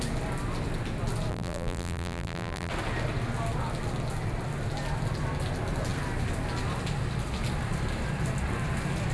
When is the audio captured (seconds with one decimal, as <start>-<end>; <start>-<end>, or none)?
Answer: 0.0-1.3; 2.7-9.1